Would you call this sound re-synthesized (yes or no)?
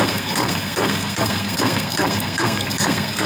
yes